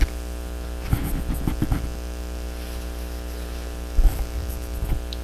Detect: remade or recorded recorded